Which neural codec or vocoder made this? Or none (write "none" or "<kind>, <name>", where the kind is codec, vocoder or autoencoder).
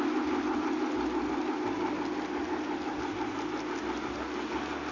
none